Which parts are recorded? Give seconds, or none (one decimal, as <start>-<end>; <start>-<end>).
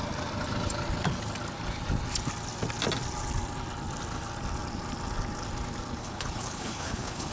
0.0-6.0